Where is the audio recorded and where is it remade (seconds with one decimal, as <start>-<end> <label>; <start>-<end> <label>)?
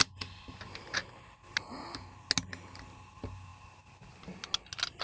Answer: 0.0-5.0 recorded